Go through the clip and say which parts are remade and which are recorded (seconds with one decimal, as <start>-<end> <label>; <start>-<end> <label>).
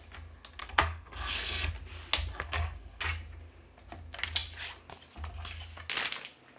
0.0-0.6 recorded; 0.6-1.7 remade; 1.7-2.3 recorded; 2.3-3.0 remade; 3.0-6.6 recorded